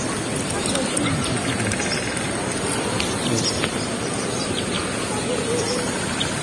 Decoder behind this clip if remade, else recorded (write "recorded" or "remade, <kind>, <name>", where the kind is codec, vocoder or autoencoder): recorded